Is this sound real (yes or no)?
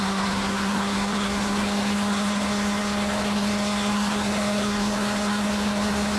no